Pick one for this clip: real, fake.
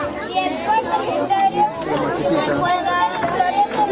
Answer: real